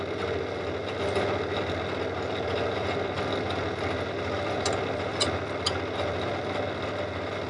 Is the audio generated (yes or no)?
no